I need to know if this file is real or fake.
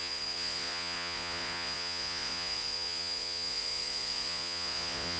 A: fake